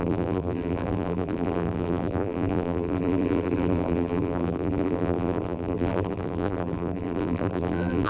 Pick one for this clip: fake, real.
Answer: fake